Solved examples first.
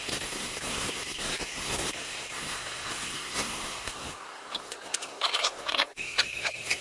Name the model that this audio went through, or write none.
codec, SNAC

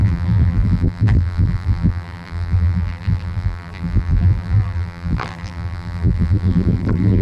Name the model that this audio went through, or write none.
vocoder, BigVGAN v2